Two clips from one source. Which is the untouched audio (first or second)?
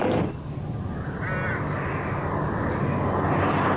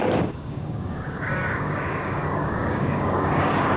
first